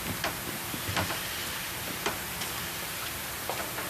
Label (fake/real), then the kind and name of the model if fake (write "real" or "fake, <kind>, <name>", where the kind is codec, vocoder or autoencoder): real